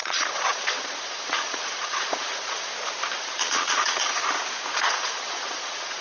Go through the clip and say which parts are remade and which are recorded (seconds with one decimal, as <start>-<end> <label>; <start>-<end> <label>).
0.0-2.7 remade; 2.7-3.2 recorded; 3.2-4.2 remade; 4.2-4.8 recorded; 4.8-6.0 remade